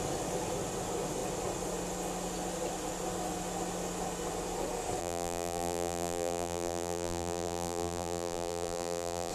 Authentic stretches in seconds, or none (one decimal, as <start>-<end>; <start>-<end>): 0.0-5.0